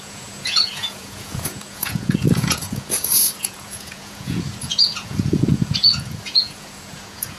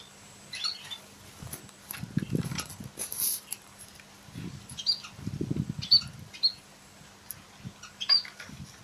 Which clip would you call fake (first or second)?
first